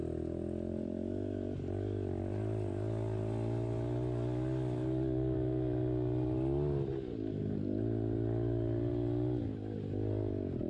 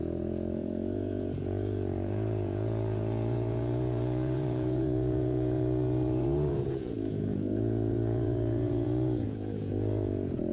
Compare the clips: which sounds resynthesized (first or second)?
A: second